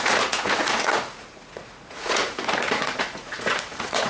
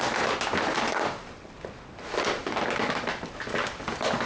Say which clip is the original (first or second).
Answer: second